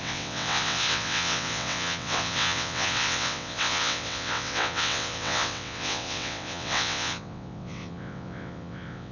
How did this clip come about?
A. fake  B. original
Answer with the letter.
A